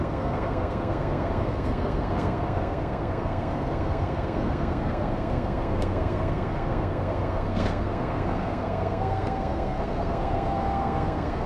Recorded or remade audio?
remade